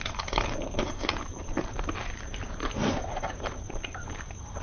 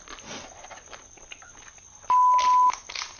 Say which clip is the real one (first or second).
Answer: second